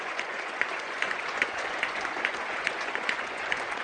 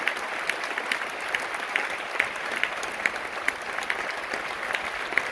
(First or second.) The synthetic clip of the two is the first